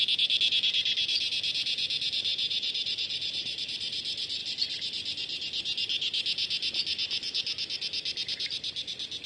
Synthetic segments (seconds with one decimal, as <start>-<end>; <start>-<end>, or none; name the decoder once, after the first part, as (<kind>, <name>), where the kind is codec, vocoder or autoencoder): 2.3-3.6 (vocoder, BigVGAN v2)